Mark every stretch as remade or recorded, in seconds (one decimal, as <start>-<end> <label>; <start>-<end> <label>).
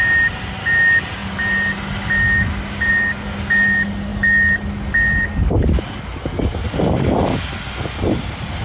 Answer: 0.0-8.6 recorded